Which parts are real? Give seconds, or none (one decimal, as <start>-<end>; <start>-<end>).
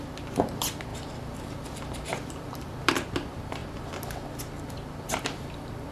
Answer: 3.6-5.2